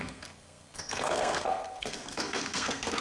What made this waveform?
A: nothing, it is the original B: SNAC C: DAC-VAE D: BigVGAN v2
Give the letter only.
B